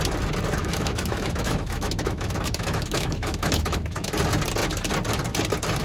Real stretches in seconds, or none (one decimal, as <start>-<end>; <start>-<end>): 0.0-0.6; 4.1-5.8